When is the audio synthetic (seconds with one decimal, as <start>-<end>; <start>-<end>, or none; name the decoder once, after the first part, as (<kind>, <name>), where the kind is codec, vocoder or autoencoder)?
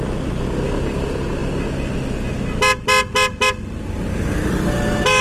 none